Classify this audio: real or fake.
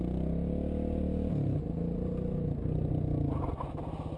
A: real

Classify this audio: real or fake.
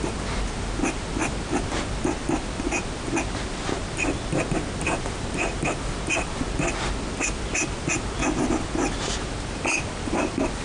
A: real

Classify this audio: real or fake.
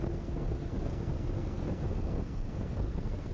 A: fake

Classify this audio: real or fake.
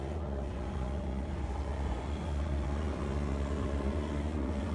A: fake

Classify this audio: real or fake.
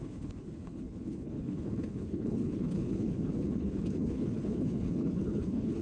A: fake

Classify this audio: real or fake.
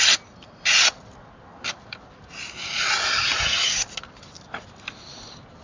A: real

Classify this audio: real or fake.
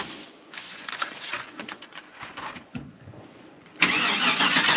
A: fake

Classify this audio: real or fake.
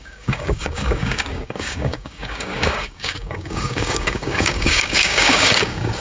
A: fake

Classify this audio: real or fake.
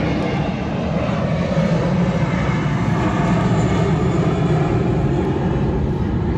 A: real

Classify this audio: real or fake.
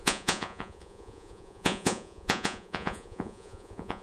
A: fake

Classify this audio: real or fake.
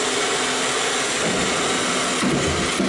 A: real